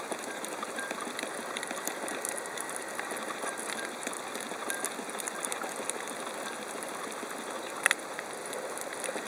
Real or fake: real